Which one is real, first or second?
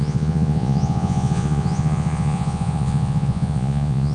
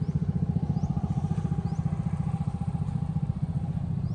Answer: second